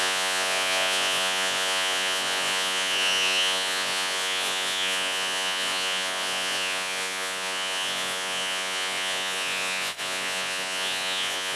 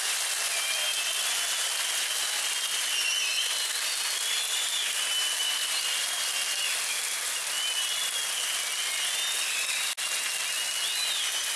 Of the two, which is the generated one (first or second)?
first